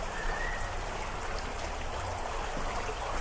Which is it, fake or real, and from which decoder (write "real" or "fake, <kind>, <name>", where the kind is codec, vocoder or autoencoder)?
real